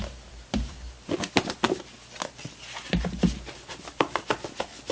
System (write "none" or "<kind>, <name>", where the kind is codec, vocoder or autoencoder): none